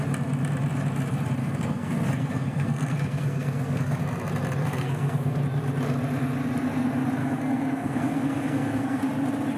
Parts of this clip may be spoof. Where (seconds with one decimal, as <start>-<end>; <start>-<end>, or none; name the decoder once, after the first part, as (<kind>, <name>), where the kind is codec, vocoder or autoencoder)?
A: 1.4-4.0 (codec, SNAC); 4.6-5.4; 7.2-9.1